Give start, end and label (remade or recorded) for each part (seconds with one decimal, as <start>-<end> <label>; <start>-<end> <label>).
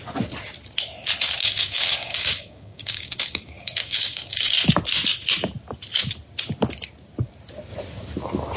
0.0-1.4 recorded; 1.4-4.5 remade; 4.5-8.6 recorded